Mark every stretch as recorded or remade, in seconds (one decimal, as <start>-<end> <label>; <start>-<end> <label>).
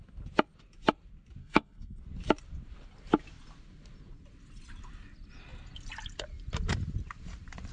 0.0-1.4 recorded; 1.4-2.0 remade; 2.0-7.7 recorded